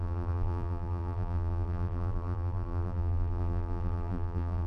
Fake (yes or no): yes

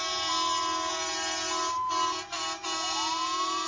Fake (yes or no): no